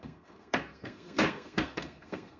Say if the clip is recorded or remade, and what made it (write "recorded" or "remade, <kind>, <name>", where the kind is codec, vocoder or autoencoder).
remade, codec, SNAC